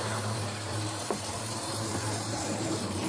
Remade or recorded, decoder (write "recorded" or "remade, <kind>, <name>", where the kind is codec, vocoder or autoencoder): remade, vocoder, BigVGAN v2